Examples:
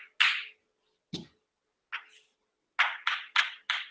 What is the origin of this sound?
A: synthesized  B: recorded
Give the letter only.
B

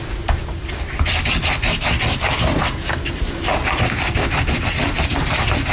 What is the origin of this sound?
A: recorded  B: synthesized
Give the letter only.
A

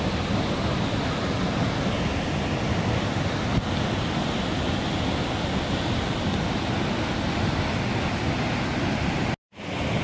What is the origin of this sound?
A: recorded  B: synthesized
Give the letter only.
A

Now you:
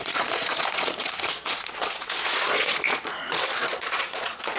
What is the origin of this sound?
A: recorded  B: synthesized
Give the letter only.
B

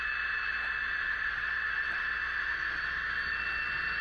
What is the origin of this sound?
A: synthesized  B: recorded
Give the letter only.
B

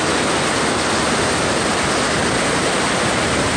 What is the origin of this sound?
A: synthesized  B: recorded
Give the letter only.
B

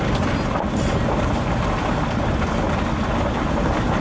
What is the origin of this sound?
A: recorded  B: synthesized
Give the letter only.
A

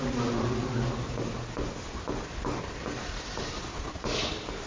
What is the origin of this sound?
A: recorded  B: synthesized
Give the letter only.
A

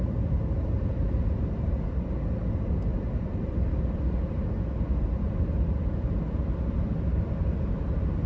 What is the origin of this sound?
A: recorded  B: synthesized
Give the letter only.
A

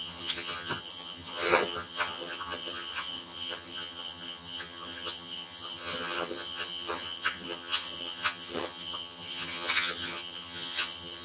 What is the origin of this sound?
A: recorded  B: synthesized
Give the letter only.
B